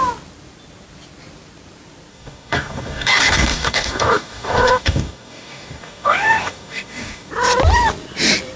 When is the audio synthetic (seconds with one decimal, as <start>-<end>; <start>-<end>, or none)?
2.1-7.3